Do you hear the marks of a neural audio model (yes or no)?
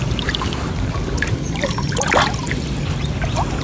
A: no